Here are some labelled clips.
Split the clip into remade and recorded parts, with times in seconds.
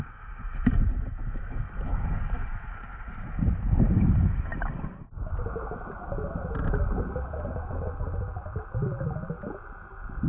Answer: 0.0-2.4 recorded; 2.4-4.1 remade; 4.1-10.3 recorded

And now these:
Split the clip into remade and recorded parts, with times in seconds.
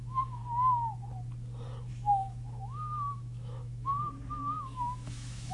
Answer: 0.0-0.4 remade; 0.4-1.9 recorded; 1.9-3.9 remade; 3.9-4.6 recorded; 4.6-5.5 remade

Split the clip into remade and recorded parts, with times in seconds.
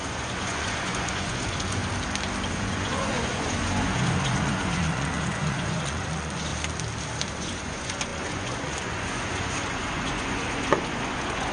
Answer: 0.0-1.8 remade; 1.8-2.5 recorded; 2.5-6.5 remade; 6.5-7.3 recorded; 7.3-11.5 remade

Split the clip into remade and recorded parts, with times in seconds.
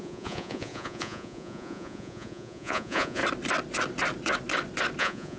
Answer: 0.0-3.2 remade; 3.2-5.0 recorded; 5.0-5.4 remade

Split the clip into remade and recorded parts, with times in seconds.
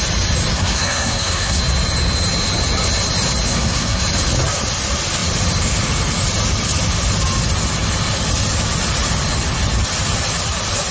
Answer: 0.0-0.5 recorded; 0.5-1.6 remade; 1.6-3.5 recorded; 3.5-4.0 remade; 4.0-10.9 recorded